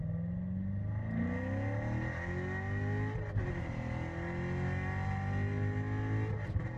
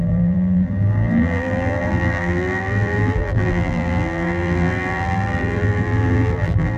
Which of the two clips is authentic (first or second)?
first